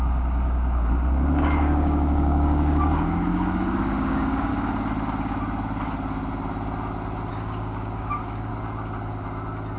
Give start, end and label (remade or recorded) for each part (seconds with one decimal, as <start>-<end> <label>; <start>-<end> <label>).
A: 0.0-4.5 remade; 4.5-7.3 recorded; 7.3-8.5 remade; 8.5-9.8 recorded